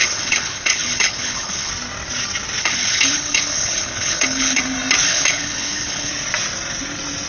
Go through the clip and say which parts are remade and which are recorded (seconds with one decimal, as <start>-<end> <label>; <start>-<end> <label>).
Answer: 0.0-1.7 remade; 1.7-2.6 recorded; 2.6-4.6 remade; 4.6-5.0 recorded; 5.0-6.1 remade; 6.1-7.3 recorded